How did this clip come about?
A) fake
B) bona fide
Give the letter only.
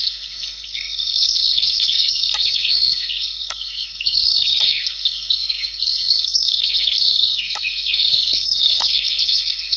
A